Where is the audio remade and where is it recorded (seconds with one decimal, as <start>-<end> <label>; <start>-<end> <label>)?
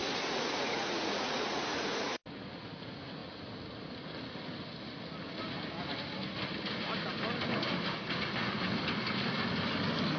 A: 0.0-2.2 remade; 2.2-10.2 recorded